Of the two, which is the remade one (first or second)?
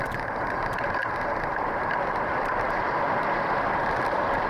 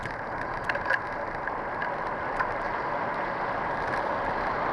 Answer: first